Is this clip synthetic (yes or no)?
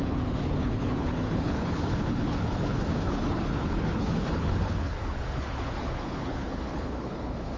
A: yes